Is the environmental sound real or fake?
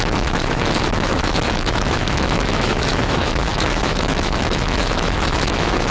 fake